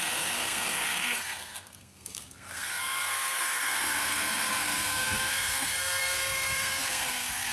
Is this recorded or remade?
remade